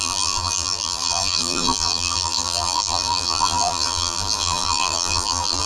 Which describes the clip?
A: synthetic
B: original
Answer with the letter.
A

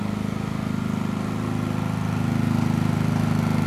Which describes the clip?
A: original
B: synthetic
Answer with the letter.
A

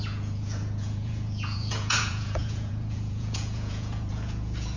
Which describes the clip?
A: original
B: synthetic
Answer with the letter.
B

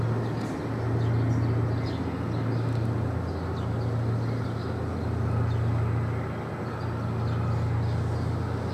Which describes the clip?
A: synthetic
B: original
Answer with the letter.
B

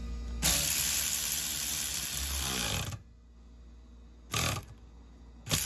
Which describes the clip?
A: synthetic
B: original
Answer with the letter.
B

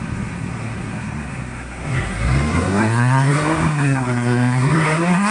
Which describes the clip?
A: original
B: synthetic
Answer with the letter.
B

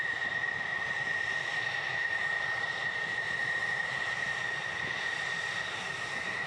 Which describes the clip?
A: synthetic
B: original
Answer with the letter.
A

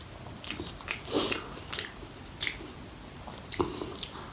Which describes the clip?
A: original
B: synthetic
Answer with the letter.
A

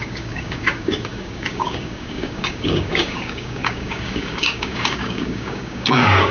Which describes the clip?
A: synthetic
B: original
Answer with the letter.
A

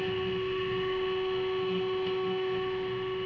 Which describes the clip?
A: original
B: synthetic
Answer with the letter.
B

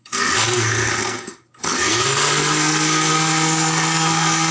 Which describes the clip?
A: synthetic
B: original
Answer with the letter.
A